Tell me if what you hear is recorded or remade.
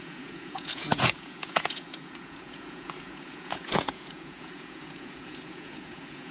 remade